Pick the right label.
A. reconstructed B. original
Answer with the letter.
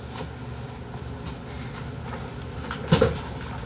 B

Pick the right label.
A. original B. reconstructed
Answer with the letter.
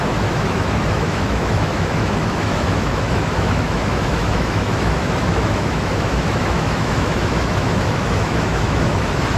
B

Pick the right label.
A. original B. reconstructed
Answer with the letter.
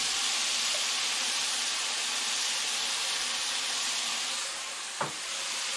A